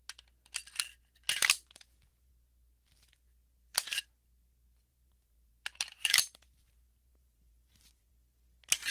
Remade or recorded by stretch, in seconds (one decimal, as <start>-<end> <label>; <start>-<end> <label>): 0.0-1.3 recorded; 1.3-2.3 remade; 2.3-4.9 recorded; 4.9-8.1 remade; 8.1-8.9 recorded